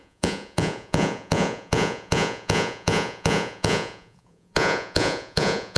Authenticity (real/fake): fake